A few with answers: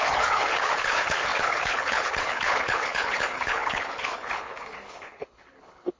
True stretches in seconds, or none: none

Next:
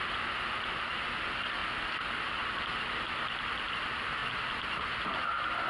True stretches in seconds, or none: 0.0-5.7

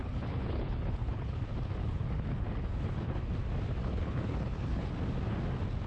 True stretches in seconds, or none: 1.4-1.8; 3.2-3.8; 4.9-5.9

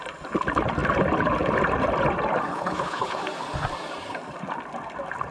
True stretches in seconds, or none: 0.0-2.5; 3.2-5.3

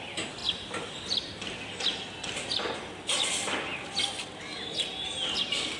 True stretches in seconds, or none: 0.0-5.8